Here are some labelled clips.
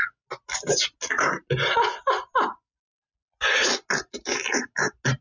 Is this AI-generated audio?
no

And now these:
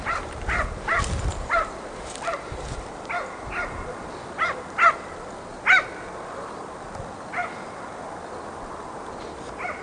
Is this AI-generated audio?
yes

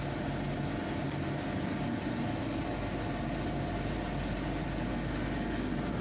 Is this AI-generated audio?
no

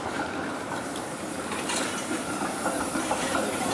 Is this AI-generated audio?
yes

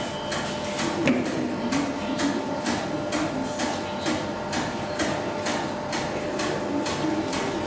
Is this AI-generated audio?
no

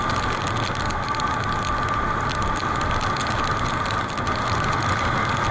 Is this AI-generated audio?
no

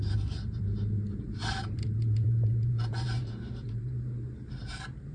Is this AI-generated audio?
yes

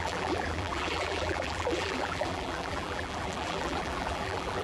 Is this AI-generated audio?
yes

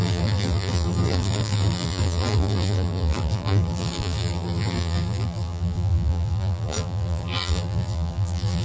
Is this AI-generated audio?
yes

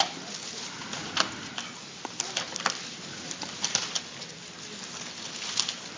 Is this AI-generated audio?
no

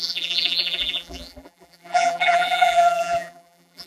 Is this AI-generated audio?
yes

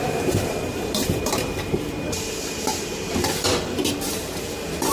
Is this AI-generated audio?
yes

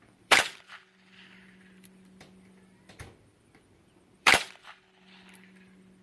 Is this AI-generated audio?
yes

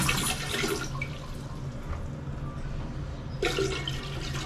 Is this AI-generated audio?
no